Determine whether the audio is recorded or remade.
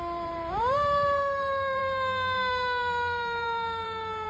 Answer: remade